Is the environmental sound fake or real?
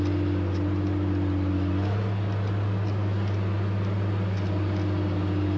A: real